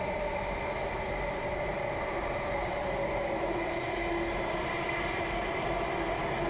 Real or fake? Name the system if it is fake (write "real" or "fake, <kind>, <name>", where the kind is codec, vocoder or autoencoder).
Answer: real